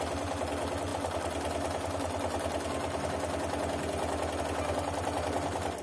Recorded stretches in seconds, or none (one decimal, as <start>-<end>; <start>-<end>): 0.0-5.8